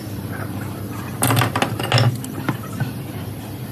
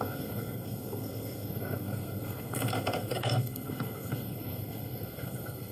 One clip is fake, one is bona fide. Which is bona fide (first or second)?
first